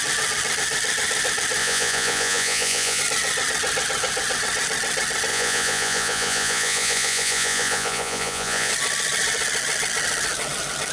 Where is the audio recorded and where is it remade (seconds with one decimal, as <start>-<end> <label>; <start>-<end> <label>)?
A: 0.0-1.6 recorded; 1.6-3.0 remade; 3.0-5.3 recorded; 5.3-8.7 remade; 8.7-10.9 recorded